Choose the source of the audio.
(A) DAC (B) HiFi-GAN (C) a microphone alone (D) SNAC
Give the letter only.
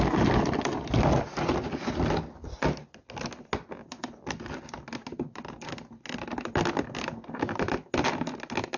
C